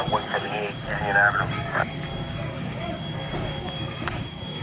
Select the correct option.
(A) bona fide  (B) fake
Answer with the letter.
B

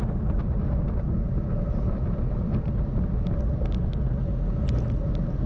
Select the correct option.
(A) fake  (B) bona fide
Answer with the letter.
B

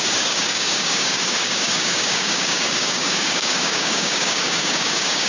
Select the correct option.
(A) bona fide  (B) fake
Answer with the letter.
B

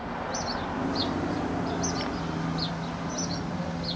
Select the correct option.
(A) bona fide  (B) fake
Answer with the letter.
A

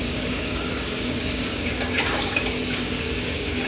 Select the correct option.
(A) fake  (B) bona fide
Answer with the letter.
A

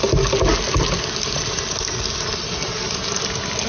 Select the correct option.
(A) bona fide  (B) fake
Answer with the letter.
A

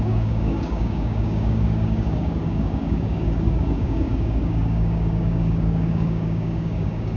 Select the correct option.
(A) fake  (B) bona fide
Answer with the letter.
A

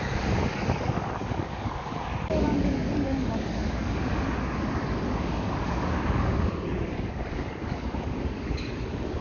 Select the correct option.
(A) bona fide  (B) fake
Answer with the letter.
B